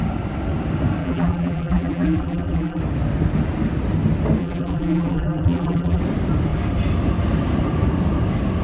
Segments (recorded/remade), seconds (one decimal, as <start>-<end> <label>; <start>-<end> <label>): 0.0-1.0 recorded; 1.0-2.8 remade; 2.8-4.4 recorded; 4.4-6.0 remade; 6.0-8.6 recorded